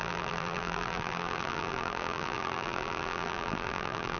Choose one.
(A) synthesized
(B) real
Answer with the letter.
A